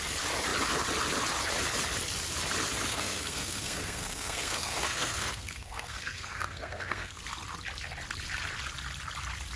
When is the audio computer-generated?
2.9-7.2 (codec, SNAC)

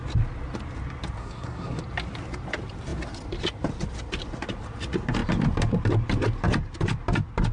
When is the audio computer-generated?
1.2-1.8 (codec, SNAC)